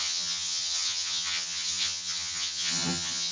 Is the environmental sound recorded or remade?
remade